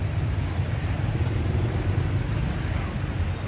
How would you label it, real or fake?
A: real